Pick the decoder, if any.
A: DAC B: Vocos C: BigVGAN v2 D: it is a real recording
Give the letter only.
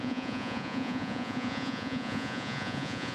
B